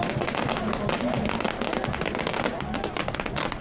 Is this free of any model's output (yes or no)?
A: yes